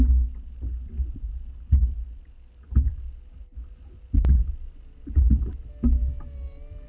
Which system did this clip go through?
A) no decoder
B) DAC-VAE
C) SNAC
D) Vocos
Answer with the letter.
A